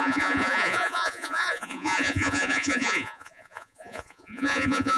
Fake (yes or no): yes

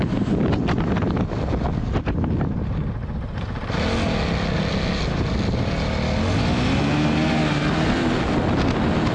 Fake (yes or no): no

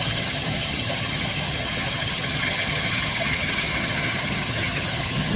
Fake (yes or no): yes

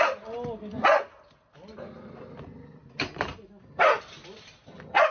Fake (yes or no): no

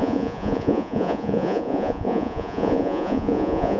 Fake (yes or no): yes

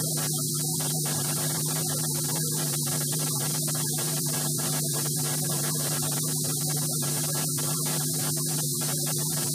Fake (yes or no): yes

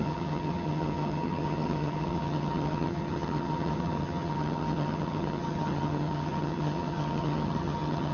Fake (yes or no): yes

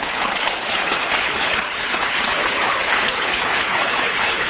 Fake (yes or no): yes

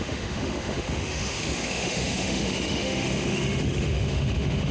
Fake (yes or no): yes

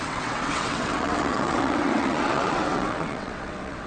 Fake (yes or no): yes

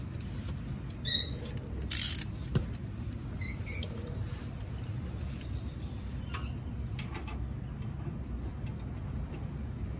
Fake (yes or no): no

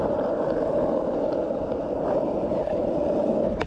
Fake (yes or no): no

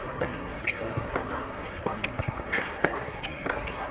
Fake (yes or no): yes